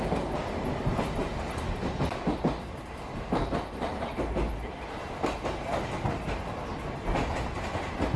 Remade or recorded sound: recorded